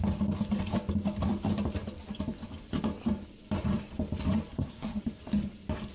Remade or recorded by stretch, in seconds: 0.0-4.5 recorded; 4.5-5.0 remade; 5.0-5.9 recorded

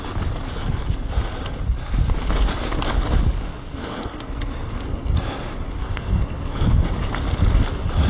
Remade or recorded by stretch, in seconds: 0.0-0.5 recorded; 0.5-1.1 remade; 1.1-3.7 recorded; 3.7-5.1 remade; 5.1-5.8 recorded; 5.8-6.9 remade; 6.9-8.1 recorded

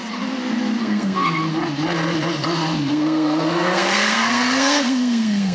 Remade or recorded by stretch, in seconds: 0.0-0.8 recorded; 0.8-1.4 remade; 1.4-2.9 recorded; 2.9-5.5 remade

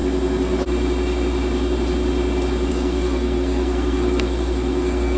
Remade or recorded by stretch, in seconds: 0.0-2.7 recorded; 2.7-5.2 remade